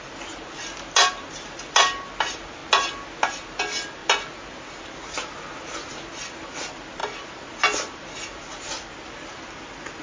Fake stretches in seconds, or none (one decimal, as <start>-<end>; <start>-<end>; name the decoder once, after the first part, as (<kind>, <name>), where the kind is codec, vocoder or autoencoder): none